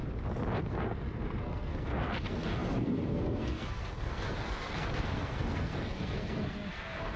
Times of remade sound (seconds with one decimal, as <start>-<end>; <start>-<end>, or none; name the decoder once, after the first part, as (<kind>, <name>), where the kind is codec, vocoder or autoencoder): 0.6-7.2 (codec, SNAC)